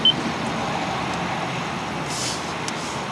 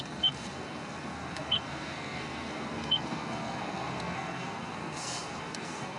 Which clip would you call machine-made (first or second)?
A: second